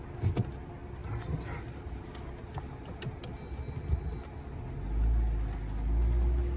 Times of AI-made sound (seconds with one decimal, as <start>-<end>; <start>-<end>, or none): none